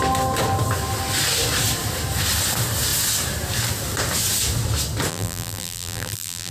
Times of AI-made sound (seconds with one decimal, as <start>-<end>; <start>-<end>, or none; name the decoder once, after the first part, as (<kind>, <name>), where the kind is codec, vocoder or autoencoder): 5.1-6.5 (vocoder, BigVGAN v2)